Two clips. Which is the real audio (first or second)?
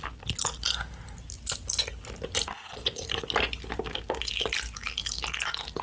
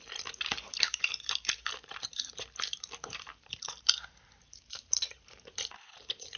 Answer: first